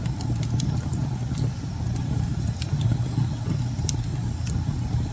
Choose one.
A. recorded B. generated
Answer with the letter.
A